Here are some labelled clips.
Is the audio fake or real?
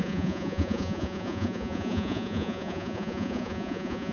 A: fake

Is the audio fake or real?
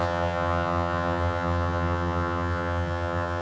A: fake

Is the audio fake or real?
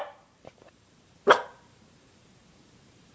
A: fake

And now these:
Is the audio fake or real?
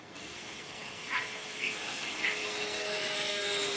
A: fake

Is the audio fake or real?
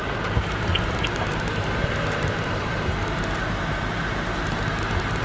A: fake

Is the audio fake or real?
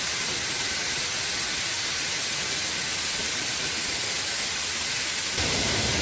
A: real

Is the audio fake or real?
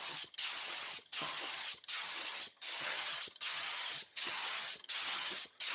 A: fake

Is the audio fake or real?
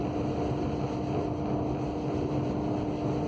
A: real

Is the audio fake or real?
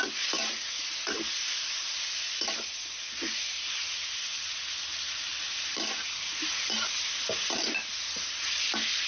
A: real